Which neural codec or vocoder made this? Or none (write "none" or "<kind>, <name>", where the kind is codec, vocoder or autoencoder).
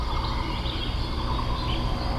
none